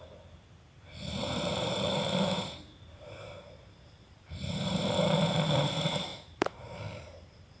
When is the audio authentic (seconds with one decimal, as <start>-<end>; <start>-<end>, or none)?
0.0-1.2; 4.9-6.1; 6.8-7.6